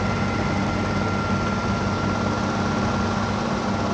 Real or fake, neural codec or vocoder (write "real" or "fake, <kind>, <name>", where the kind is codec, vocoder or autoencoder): real